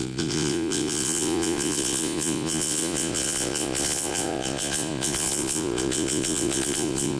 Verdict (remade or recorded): remade